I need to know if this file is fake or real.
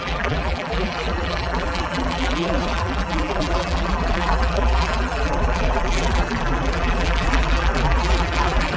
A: fake